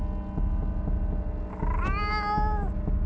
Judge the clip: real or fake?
real